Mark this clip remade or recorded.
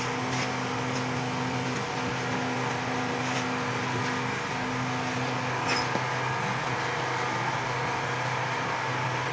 recorded